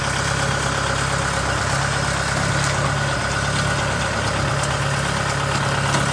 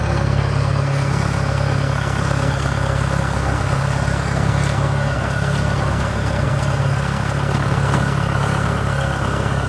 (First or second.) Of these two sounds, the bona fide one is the first